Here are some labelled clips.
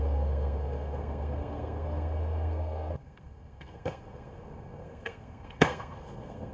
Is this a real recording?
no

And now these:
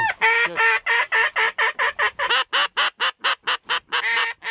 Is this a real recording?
yes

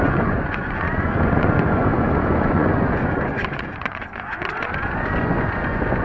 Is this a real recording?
no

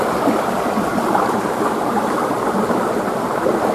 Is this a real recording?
no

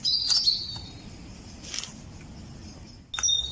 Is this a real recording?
yes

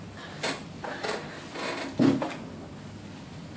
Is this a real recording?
yes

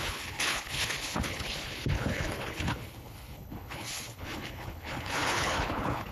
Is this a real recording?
no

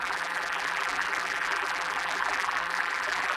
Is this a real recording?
no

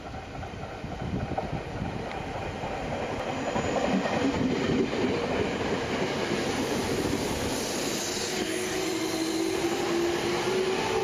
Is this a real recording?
yes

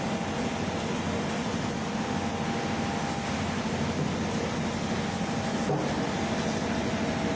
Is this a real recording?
yes